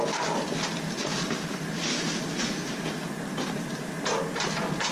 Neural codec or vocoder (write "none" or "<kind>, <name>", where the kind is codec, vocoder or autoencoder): none